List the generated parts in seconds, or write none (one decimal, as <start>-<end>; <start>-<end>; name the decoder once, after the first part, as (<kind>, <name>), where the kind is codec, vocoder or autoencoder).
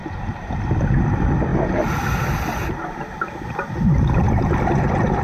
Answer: 0.0-0.6 (vocoder, BigVGAN v2)